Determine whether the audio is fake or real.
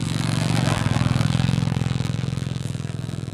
fake